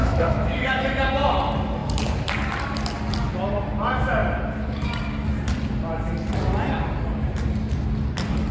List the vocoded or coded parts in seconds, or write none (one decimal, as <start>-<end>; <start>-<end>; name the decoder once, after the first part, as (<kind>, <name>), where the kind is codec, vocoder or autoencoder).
0.0-1.1 (autoencoder, DAC-VAE)